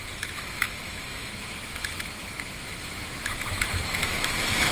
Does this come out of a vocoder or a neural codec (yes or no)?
yes